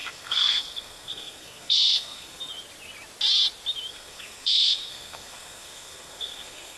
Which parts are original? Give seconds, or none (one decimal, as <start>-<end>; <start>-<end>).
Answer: 2.4-3.9